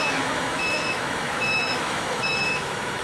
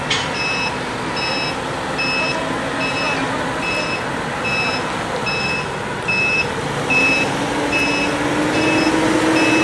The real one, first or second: second